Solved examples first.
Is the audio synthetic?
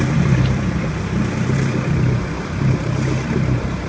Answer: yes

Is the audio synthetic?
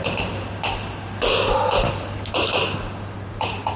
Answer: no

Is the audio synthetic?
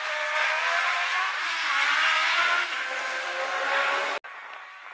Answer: no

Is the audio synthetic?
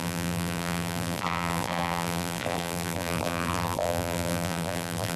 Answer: yes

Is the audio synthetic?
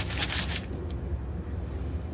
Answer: no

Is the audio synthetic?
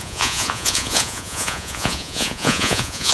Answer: yes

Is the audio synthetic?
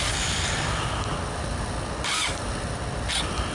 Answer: no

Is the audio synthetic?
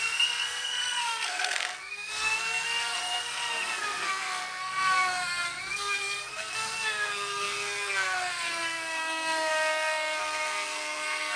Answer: yes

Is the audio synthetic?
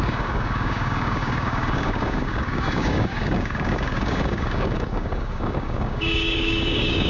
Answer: yes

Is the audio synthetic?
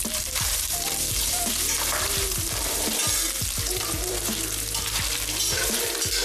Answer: yes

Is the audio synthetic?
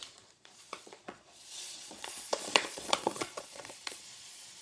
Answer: yes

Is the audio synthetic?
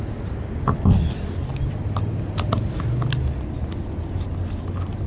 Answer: no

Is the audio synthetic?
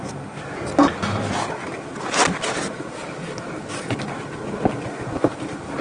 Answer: no